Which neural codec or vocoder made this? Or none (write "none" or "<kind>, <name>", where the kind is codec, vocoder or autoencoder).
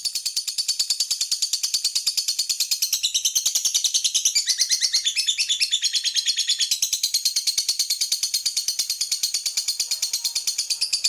none